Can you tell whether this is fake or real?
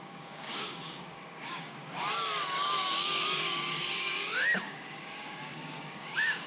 fake